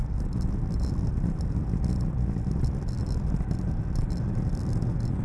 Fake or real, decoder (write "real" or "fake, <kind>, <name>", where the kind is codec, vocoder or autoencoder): real